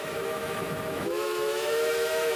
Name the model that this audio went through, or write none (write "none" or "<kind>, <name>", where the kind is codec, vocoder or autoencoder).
autoencoder, DAC-VAE